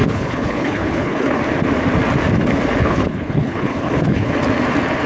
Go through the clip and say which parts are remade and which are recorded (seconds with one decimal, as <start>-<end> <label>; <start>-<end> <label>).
0.0-1.4 remade; 1.4-2.8 recorded; 2.8-4.3 remade; 4.3-5.1 recorded